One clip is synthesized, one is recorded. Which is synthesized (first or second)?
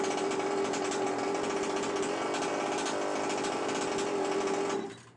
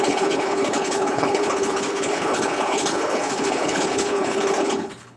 second